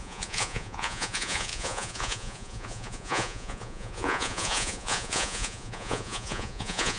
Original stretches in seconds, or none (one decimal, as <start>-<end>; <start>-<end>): none